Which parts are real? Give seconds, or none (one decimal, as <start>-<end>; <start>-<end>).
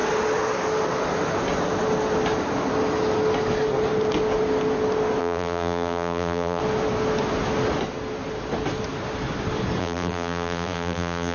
0.0-5.2; 6.6-9.8